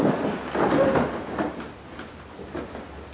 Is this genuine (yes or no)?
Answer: yes